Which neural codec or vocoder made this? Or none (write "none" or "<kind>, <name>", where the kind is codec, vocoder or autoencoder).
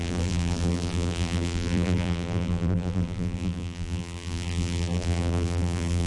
vocoder, BigVGAN v2